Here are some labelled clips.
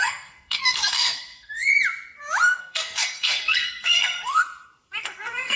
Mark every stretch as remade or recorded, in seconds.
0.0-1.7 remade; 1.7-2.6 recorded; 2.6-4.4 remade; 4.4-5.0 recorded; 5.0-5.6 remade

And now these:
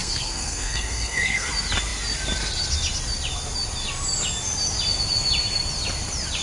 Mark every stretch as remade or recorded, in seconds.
0.0-1.5 remade; 1.5-6.4 recorded

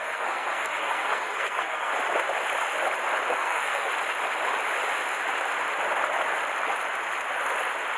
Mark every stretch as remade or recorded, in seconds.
0.0-1.9 remade; 1.9-3.3 recorded; 3.3-3.9 remade; 3.9-8.0 recorded

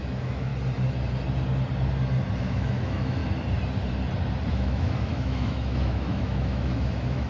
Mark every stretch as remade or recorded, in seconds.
0.0-0.5 remade; 0.5-2.4 recorded; 2.4-3.2 remade; 3.2-4.5 recorded; 4.5-7.3 remade

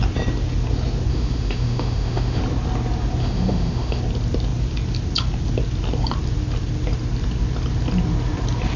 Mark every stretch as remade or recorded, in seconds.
0.0-1.1 recorded; 1.1-2.4 remade; 2.4-3.2 recorded; 3.2-4.0 remade; 4.0-8.8 recorded

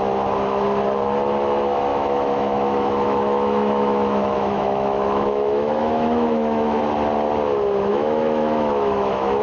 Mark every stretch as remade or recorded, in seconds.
0.0-1.9 recorded; 1.9-6.8 remade; 6.8-7.9 recorded; 7.9-9.4 remade

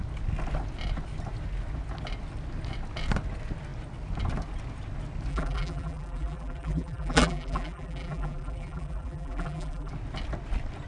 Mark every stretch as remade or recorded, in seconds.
0.0-5.3 recorded; 5.3-9.9 remade; 9.9-10.9 recorded